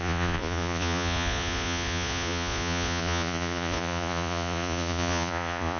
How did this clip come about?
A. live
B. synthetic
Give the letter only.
B